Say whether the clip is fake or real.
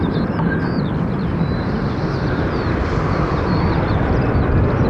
real